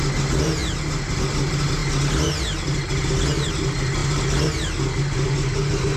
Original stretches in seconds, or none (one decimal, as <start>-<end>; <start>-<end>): 0.0-6.0